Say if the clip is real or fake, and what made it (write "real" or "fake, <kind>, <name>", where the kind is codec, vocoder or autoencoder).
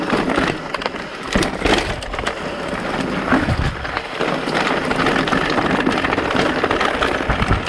real